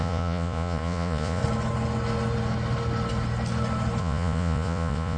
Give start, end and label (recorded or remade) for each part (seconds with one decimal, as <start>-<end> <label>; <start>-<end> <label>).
0.0-1.4 remade; 1.4-4.0 recorded; 4.0-5.2 remade